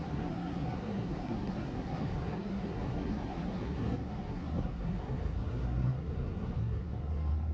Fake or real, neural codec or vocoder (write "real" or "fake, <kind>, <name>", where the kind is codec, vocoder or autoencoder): fake, codec, SNAC